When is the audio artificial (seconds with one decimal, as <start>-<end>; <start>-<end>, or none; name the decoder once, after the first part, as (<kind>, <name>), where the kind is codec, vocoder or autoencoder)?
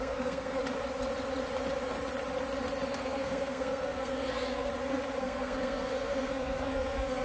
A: 0.0-0.6 (codec, SNAC); 2.9-4.7; 5.2-7.2